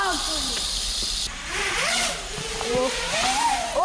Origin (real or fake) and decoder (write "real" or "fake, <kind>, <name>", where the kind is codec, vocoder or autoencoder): fake, vocoder, BigVGAN v2